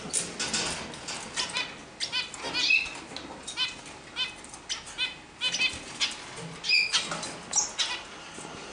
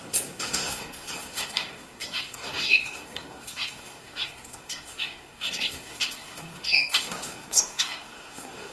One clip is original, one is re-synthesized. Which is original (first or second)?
first